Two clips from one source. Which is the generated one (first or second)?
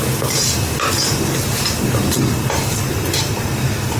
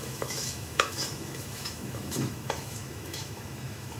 second